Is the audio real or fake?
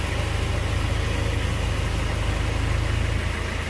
real